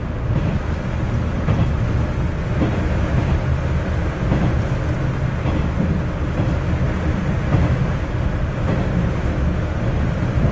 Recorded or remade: recorded